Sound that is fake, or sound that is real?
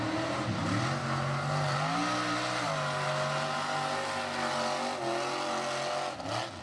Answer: real